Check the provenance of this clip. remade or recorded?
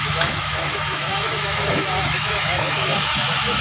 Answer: remade